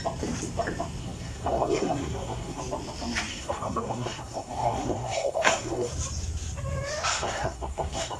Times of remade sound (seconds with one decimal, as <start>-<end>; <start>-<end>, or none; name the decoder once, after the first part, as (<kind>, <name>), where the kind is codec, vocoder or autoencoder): 1.0-2.6 (codec, SNAC); 3.3-5.9; 7.1-8.2

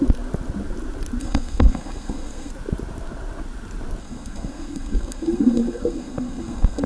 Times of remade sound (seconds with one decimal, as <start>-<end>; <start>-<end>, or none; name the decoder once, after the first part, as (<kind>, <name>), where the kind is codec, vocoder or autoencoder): 1.2-2.5 (codec, SNAC); 4.0-6.9

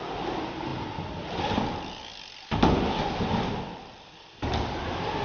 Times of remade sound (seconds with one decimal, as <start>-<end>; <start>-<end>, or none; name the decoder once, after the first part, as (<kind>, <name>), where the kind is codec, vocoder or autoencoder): none